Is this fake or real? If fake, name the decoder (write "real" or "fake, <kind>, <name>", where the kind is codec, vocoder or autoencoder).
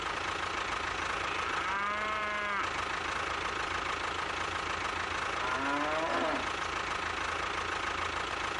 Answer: real